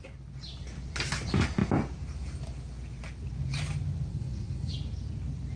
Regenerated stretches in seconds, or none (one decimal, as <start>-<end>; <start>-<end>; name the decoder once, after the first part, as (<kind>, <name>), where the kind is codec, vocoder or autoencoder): 4.1-4.7 (codec, SNAC)